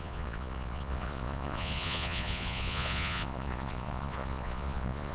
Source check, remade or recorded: remade